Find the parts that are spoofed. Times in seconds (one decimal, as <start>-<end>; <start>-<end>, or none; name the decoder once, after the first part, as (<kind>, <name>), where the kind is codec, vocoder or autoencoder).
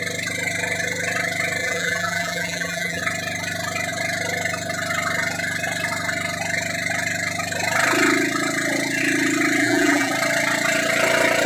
1.6-3.0 (vocoder, BigVGAN v2); 9.6-10.1